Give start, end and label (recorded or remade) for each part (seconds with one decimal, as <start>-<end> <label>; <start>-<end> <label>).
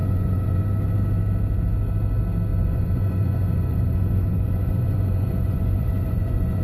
0.0-0.6 remade; 0.6-2.5 recorded; 2.5-6.6 remade